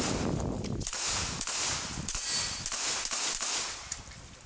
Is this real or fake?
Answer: real